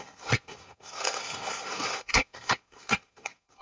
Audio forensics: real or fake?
fake